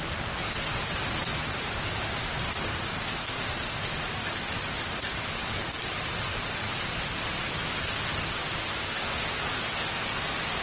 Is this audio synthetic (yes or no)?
no